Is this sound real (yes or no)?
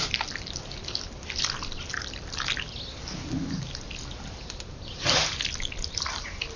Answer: yes